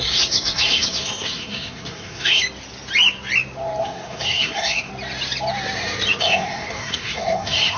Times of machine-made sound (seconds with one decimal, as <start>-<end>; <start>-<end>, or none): 0.0-2.4; 3.8-4.9; 6.2-7.8